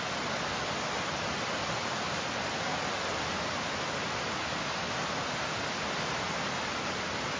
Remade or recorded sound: recorded